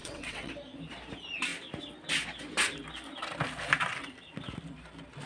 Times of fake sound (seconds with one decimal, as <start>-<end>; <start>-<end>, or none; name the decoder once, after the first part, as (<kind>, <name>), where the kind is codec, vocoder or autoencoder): 0.0-0.5 (vocoder, WaveNeXt)